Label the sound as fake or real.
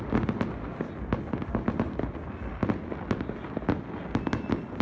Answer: real